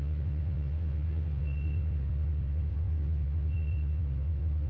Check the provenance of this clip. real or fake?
fake